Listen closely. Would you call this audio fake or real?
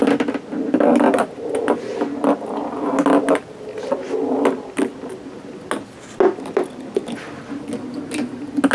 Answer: real